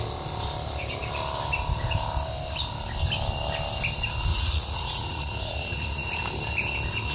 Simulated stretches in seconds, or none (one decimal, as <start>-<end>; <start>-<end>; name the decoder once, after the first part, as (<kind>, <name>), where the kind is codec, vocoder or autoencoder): 4.3-6.2 (vocoder, Vocos)